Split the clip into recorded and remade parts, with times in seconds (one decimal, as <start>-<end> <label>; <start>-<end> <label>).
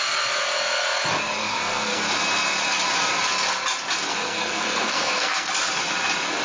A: 0.0-1.4 recorded; 1.4-2.0 remade; 2.0-4.1 recorded; 4.1-5.5 remade; 5.5-6.4 recorded